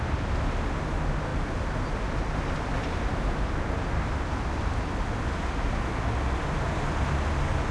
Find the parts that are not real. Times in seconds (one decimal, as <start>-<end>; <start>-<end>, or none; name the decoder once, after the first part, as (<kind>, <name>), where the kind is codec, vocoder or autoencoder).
none